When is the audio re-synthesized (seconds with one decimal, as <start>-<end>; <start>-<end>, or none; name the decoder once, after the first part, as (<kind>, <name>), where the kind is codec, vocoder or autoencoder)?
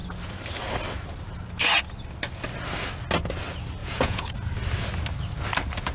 3.8-4.3 (vocoder, Vocos)